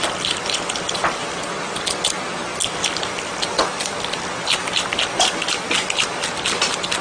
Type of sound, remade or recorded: recorded